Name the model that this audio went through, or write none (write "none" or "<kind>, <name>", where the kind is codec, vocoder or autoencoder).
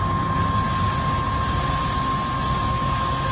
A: none